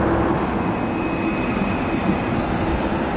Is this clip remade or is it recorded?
recorded